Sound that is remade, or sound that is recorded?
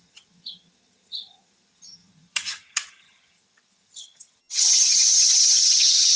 remade